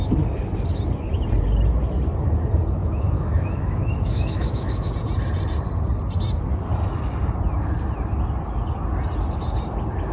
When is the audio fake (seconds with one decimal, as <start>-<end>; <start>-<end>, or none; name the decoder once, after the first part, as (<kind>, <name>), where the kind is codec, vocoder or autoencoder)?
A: 2.8-4.9 (autoencoder, DAC-VAE)